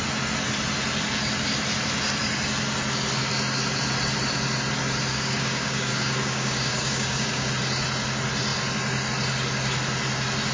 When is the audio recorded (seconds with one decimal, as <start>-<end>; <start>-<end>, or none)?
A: 0.0-5.1; 7.5-10.5